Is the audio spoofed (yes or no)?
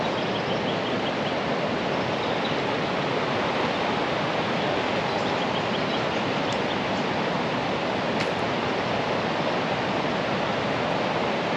no